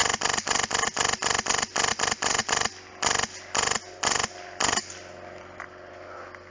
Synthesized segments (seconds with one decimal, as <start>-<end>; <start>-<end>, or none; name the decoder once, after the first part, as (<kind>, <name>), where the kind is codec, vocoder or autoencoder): none

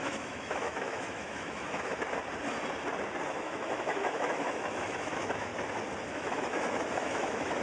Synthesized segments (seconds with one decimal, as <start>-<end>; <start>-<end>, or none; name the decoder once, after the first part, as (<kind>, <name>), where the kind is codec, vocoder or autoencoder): 0.0-1.9 (autoencoder, DAC-VAE); 3.3-5.5; 6.1-7.6

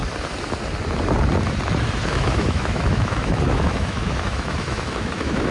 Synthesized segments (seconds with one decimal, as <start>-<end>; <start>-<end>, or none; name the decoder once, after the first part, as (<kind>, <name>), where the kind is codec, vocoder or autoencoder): 2.1-5.5 (autoencoder, DAC-VAE)

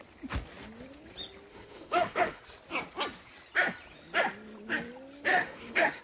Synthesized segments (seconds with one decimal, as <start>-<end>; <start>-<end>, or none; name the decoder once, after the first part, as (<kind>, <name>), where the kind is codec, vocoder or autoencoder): 1.5-2.4 (autoencoder, DAC-VAE); 5.3-6.0

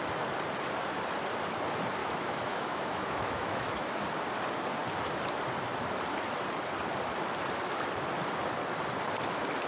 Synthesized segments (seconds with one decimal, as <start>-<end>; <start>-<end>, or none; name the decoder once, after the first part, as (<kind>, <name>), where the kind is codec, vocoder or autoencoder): 2.0-3.9 (autoencoder, DAC-VAE)